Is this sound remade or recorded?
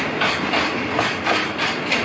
recorded